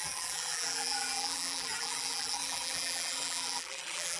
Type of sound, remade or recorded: remade